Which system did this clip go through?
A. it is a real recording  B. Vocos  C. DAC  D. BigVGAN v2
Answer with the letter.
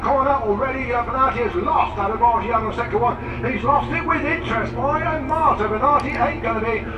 A